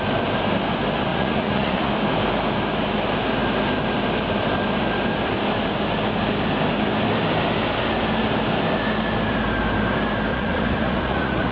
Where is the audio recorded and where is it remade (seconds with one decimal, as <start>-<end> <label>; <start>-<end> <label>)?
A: 0.0-1.1 recorded; 1.1-1.9 remade; 1.9-10.3 recorded; 10.3-11.5 remade